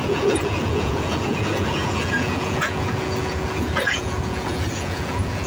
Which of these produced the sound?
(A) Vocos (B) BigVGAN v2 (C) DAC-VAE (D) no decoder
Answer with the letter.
A